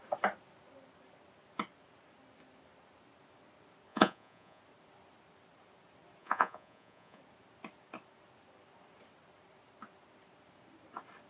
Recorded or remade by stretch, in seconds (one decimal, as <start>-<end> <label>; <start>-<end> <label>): 0.0-3.9 recorded; 3.9-4.6 remade; 4.6-6.2 recorded; 6.2-7.2 remade; 7.2-11.3 recorded